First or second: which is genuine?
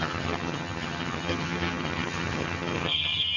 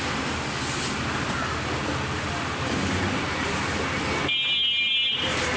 second